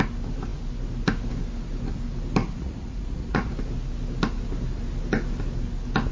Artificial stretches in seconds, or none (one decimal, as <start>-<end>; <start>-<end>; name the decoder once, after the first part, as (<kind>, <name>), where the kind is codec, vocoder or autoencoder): 2.4-3.5 (vocoder, Vocos)